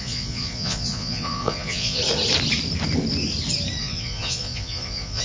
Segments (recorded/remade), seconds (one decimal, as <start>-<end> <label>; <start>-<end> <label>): 0.0-2.0 remade; 2.0-3.8 recorded; 3.8-5.2 remade